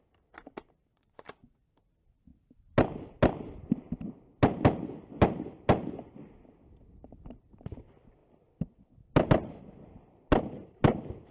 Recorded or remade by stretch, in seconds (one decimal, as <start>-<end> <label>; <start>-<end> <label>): 0.0-0.9 recorded; 0.9-1.7 remade; 1.7-11.3 recorded